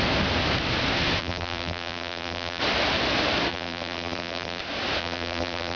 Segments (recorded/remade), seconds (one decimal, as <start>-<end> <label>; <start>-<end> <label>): 0.0-1.2 recorded; 1.2-2.6 remade; 2.6-3.5 recorded; 3.5-4.6 remade; 4.6-5.0 recorded; 5.0-5.8 remade